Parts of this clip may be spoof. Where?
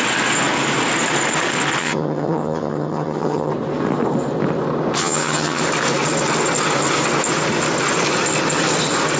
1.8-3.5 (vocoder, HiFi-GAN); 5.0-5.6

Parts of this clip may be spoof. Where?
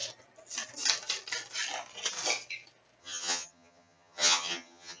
3.0-5.0 (vocoder, HiFi-GAN)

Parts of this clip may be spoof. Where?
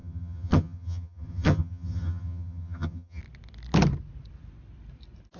0.0-3.2 (vocoder, HiFi-GAN)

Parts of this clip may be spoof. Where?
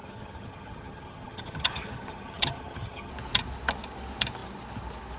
0.0-3.1 (vocoder, HiFi-GAN)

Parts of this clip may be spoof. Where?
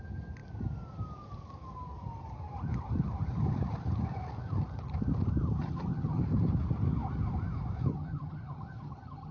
5.6-6.2 (vocoder, HiFi-GAN); 7.9-9.3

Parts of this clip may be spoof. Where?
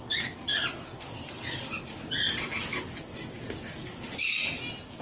none